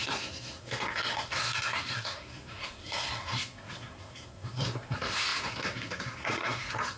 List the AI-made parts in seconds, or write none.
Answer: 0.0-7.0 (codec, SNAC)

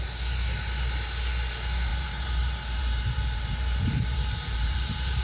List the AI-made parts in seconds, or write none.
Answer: 1.9-5.2 (vocoder, BigVGAN v2)